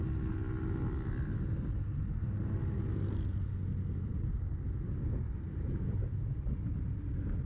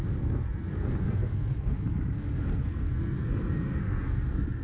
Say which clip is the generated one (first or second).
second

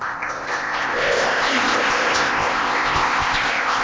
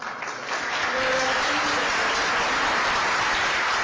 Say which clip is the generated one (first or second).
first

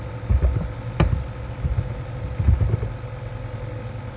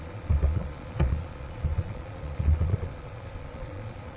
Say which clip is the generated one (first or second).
second